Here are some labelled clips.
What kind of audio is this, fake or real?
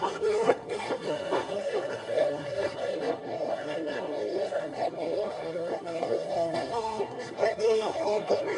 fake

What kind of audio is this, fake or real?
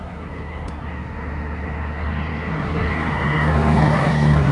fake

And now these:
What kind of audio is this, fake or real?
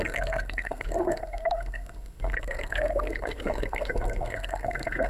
fake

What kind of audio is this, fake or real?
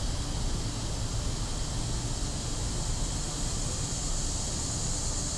real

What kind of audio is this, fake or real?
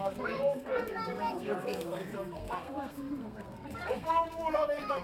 fake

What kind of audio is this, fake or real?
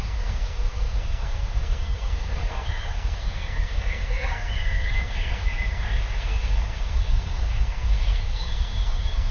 fake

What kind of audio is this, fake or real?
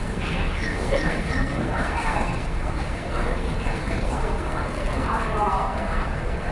fake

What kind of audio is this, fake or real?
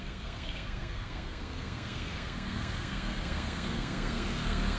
fake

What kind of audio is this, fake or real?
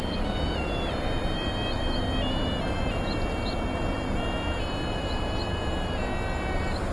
real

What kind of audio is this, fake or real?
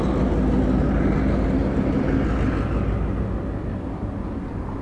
real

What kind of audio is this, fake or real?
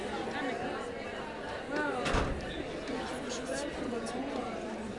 real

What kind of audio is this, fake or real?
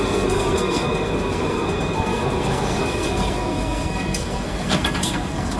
fake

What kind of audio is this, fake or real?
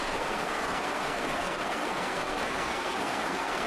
fake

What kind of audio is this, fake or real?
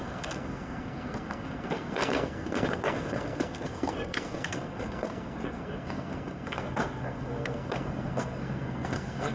fake